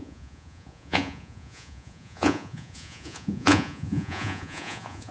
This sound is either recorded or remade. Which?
remade